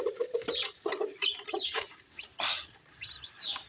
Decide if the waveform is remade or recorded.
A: remade